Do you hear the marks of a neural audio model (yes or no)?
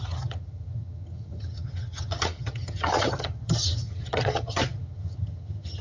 yes